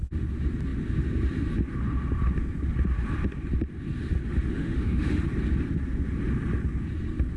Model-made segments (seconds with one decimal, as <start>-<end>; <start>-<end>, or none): 4.5-5.2